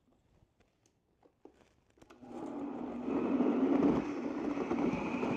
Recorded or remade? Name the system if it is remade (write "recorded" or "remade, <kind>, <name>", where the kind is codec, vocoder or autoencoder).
recorded